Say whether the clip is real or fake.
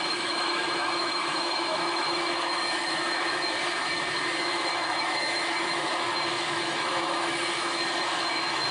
fake